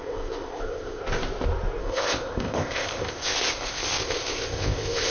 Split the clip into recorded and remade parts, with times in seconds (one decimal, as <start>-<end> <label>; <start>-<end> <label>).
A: 0.0-1.0 remade; 1.0-1.8 recorded; 1.8-5.1 remade